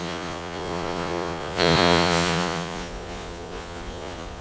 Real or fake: fake